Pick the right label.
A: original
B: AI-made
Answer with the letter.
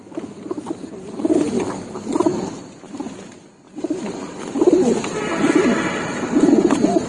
A